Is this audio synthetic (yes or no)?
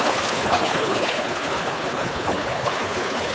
yes